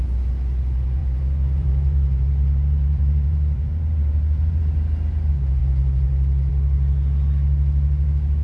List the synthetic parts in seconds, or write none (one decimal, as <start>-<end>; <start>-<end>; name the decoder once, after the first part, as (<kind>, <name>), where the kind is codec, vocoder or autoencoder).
1.0-4.6 (vocoder, BigVGAN v2)